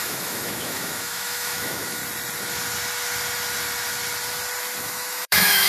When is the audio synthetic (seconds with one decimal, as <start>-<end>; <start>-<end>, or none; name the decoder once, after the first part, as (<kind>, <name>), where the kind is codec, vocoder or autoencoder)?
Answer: 0.0-2.0 (autoencoder, DAC-VAE); 4.8-5.7